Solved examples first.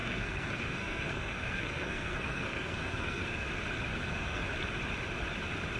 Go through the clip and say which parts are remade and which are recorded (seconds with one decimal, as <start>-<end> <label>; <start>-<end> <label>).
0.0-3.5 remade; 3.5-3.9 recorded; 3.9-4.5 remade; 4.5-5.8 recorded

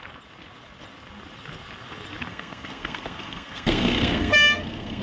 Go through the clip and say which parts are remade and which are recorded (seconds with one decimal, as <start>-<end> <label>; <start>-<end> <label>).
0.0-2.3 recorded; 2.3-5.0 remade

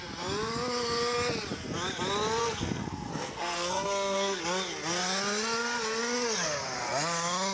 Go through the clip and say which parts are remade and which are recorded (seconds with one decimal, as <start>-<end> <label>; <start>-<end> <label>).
0.0-2.4 recorded; 2.4-4.4 remade; 4.4-7.5 recorded